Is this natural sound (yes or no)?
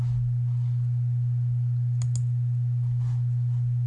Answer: yes